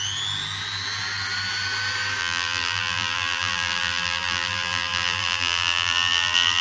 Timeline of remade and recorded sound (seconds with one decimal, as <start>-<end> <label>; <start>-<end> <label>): 0.0-2.2 recorded; 2.2-6.6 remade